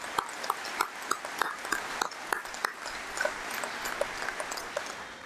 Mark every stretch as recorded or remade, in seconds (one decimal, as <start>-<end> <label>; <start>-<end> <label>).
0.0-5.3 recorded